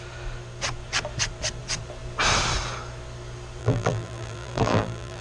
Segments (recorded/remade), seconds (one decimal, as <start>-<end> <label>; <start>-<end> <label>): 0.0-3.6 recorded; 3.6-5.2 remade